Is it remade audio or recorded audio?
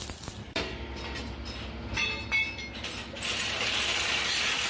recorded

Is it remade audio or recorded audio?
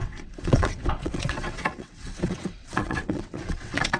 remade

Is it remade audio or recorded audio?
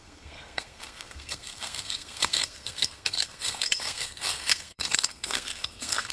remade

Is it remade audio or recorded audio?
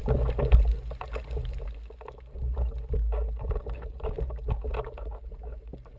recorded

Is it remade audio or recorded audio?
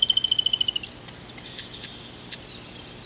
recorded